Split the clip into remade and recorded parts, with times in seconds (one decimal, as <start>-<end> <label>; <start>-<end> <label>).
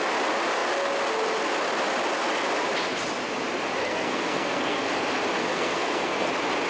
0.0-3.8 recorded; 3.8-4.9 remade; 4.9-5.4 recorded; 5.4-6.3 remade; 6.3-6.7 recorded